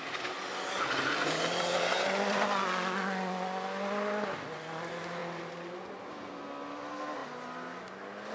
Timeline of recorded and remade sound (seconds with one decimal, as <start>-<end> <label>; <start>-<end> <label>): 0.0-8.3 recorded